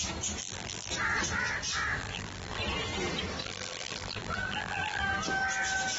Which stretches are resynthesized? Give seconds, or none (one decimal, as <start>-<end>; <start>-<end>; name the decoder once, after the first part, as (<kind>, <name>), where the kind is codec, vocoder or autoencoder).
0.4-0.9 (vocoder, BigVGAN v2); 2.0-2.6; 3.4-5.0